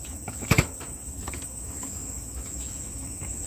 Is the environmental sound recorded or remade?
remade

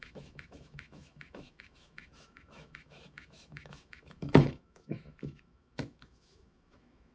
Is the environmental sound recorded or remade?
remade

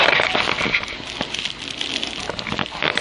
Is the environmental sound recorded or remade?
recorded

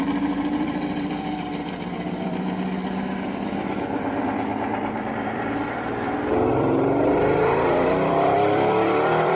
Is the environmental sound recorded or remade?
remade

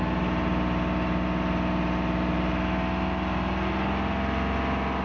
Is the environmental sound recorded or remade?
recorded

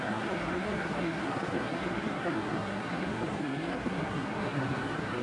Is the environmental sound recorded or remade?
remade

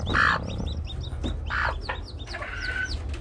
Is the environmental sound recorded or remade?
recorded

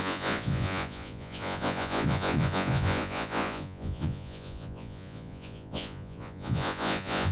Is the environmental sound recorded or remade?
remade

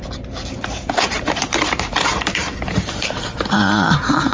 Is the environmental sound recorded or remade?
remade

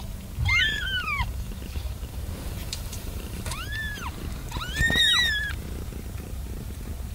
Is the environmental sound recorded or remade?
remade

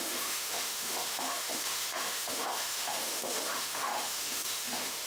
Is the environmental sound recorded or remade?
remade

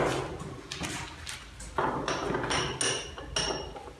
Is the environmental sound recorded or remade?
recorded